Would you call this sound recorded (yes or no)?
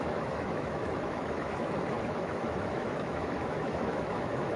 no